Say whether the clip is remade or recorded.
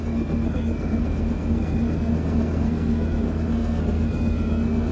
remade